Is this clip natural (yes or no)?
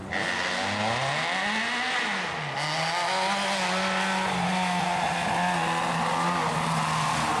yes